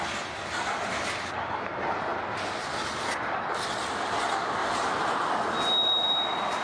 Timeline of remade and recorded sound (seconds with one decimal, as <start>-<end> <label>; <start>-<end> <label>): 0.0-4.6 recorded; 4.6-5.1 remade; 5.1-6.6 recorded